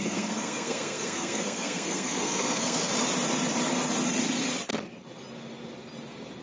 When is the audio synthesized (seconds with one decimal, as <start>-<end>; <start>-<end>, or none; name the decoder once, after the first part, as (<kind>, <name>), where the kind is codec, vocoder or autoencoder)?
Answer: 0.0-2.9 (codec, SNAC)